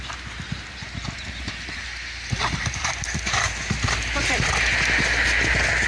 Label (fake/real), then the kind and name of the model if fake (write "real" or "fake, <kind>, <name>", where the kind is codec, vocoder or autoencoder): real